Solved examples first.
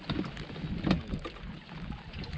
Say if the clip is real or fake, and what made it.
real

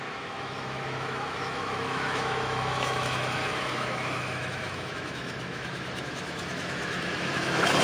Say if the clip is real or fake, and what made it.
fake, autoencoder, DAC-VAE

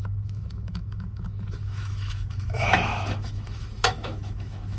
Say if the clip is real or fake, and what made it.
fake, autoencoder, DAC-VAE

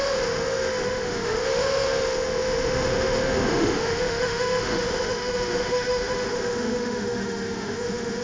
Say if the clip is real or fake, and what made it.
fake, autoencoder, DAC-VAE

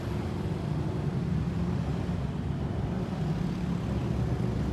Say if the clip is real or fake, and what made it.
real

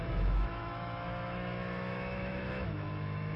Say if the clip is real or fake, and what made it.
fake, autoencoder, DAC-VAE